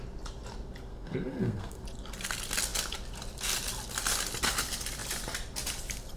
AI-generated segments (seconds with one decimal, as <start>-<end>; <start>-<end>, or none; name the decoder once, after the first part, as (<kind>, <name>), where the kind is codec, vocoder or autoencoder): 0.9-1.8 (codec, SNAC)